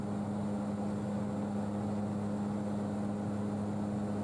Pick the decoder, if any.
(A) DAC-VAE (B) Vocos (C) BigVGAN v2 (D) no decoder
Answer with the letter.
D